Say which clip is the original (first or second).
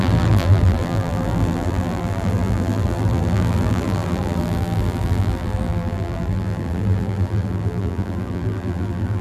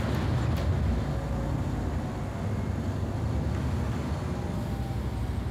second